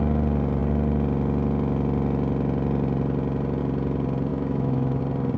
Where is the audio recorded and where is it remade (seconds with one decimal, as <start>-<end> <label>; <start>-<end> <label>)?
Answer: 0.0-4.3 recorded; 4.3-5.0 remade; 5.0-5.4 recorded